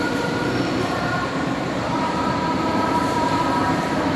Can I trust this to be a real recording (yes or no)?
no